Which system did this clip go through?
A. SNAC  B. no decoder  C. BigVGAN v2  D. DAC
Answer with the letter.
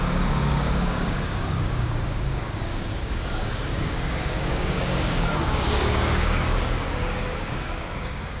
D